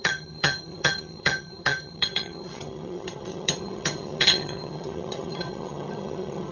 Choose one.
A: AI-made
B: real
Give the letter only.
A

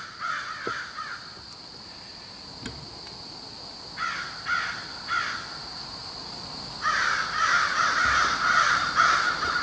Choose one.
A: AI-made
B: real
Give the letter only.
B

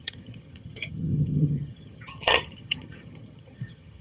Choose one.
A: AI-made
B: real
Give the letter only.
A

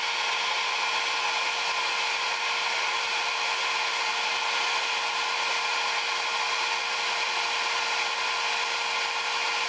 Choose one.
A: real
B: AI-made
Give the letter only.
A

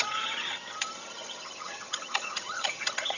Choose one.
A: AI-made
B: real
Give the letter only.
A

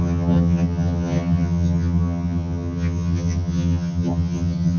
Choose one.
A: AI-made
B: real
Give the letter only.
A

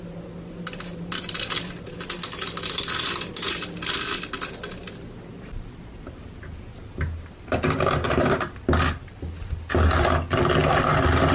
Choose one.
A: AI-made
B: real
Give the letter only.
B